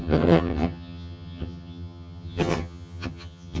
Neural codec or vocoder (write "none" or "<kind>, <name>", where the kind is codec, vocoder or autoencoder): vocoder, HiFi-GAN